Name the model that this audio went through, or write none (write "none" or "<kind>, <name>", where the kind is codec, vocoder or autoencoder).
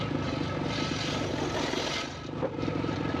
none